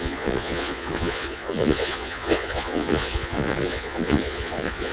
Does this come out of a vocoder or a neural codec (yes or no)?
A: yes